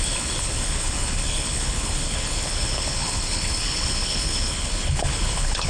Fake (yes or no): yes